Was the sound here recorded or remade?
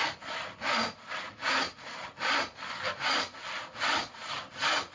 recorded